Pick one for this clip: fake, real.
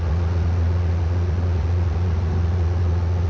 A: fake